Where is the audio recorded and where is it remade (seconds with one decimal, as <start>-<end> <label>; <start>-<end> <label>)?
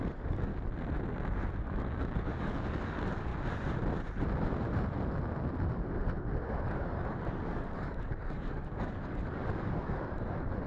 0.0-0.5 remade; 0.5-1.6 recorded; 1.6-3.3 remade; 3.3-6.6 recorded; 6.6-10.7 remade